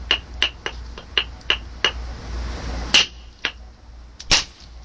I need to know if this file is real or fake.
real